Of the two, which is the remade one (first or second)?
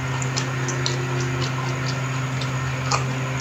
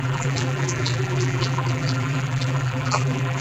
second